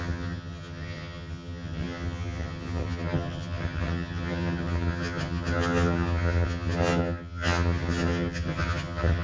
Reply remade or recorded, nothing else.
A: remade